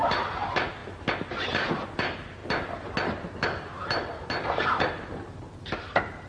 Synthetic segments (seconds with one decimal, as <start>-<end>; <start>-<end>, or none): none